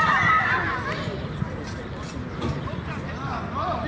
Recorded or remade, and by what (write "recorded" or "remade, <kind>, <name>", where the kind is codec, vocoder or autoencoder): remade, vocoder, BigVGAN v2